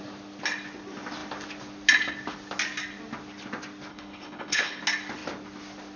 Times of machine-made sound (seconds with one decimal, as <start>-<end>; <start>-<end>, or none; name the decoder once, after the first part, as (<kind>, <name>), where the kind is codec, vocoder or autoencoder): 3.9-4.8 (codec, HILCodec)